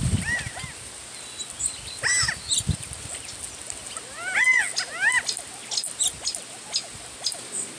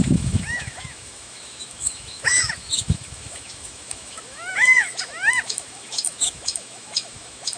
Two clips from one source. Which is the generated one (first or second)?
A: second